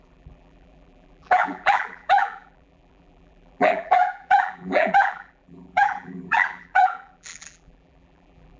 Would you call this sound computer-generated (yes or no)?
yes